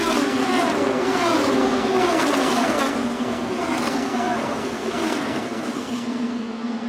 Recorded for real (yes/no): no